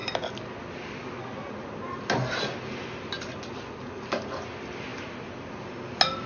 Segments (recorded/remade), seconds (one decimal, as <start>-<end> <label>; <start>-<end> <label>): 0.0-6.3 recorded